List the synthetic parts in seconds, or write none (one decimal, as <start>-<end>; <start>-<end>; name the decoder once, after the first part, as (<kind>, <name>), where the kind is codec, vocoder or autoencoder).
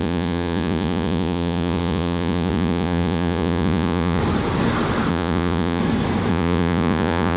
0.0-4.2 (vocoder, Vocos); 5.1-5.8; 6.3-7.4